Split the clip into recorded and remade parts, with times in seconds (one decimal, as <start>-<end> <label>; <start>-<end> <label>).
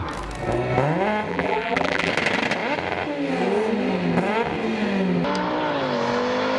0.0-1.3 recorded; 1.3-2.1 remade; 2.1-6.6 recorded